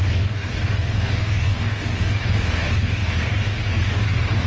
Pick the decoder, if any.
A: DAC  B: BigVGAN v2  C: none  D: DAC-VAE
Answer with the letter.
A